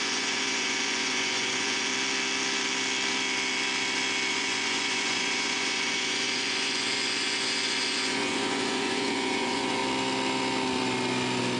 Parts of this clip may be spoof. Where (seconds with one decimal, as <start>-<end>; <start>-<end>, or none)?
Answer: 0.0-1.9; 4.3-9.8